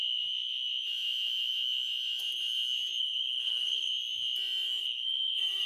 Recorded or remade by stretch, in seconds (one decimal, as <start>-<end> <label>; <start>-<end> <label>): 0.0-3.0 recorded; 3.0-3.9 remade; 3.9-4.8 recorded; 4.8-5.7 remade